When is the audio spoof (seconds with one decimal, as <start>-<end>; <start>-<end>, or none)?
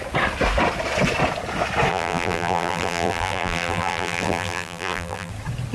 1.9-5.3